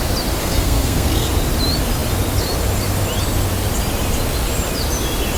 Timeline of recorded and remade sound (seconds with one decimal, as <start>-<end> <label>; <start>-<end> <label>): 0.0-0.4 recorded; 0.4-1.3 remade; 1.3-5.4 recorded